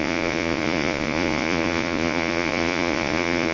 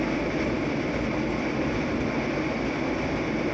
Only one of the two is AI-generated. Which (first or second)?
first